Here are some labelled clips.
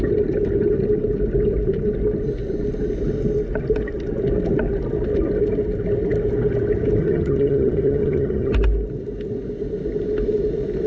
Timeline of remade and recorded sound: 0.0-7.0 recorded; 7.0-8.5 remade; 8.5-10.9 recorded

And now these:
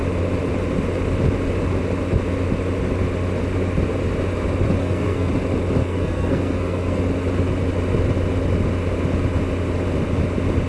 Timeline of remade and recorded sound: 0.0-4.8 recorded; 4.8-5.3 remade; 5.3-5.8 recorded; 5.8-7.0 remade; 7.0-10.7 recorded

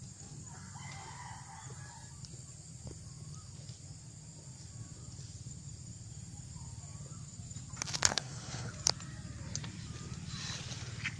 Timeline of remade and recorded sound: 0.0-8.1 recorded; 8.1-8.7 remade; 8.7-11.2 recorded

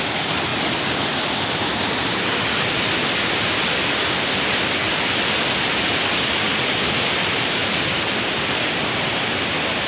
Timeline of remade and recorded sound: 0.0-0.5 recorded; 0.5-5.0 remade; 5.0-7.6 recorded; 7.6-9.1 remade; 9.1-9.9 recorded

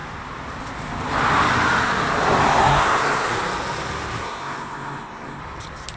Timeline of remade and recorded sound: 0.0-2.6 recorded; 2.6-3.3 remade; 3.3-4.2 recorded; 4.2-5.4 remade; 5.4-6.0 recorded

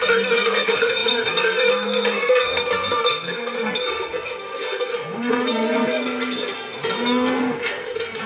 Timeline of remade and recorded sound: 0.0-8.3 remade